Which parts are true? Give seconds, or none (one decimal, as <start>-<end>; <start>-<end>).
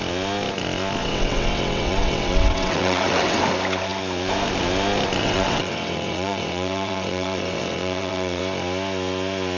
0.0-1.0; 3.4-5.2; 8.4-9.6